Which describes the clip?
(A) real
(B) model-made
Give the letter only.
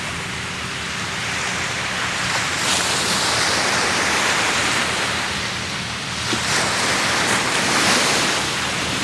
A